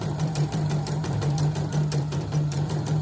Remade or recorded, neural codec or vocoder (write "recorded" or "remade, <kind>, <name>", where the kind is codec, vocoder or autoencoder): remade, vocoder, BigVGAN v2